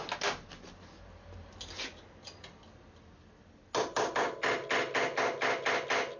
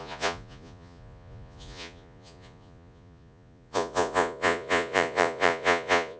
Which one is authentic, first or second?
first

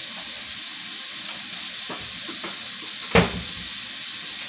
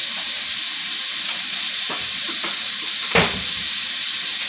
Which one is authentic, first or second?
first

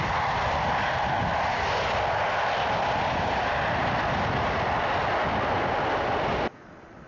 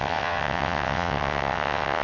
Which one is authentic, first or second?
first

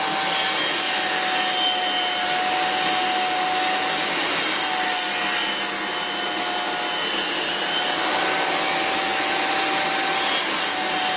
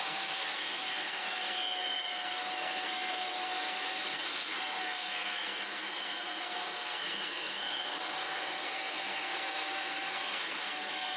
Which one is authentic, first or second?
first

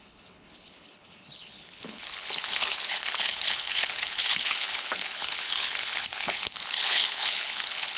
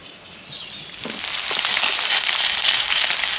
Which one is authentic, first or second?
second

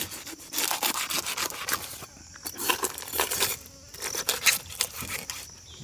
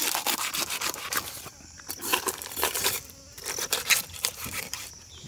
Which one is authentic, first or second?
first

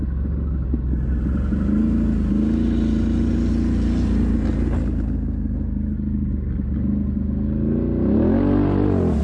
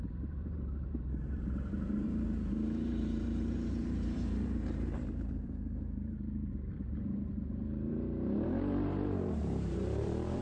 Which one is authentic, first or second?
first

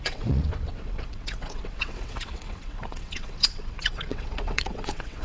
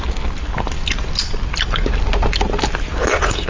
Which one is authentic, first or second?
second